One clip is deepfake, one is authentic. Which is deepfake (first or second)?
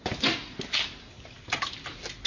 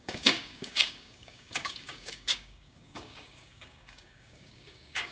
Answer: second